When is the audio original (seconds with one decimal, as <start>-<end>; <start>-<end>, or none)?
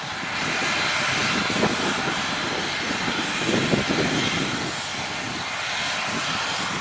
0.0-4.9; 5.5-6.8